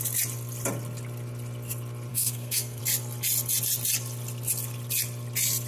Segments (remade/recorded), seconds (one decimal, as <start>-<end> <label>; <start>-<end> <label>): 0.0-2.1 recorded; 2.1-2.8 remade; 2.8-5.7 recorded